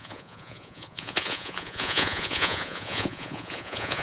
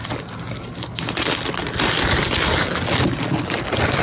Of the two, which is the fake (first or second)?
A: first